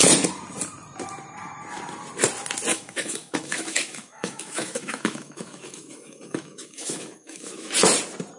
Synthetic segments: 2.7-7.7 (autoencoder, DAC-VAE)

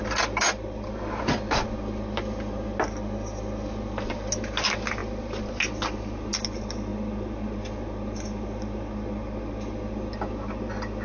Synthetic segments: none

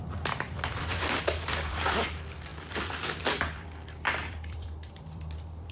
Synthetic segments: 0.0-5.7 (vocoder, BigVGAN v2)